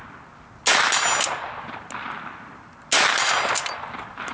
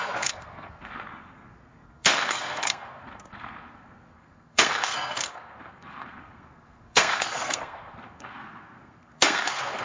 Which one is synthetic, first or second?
second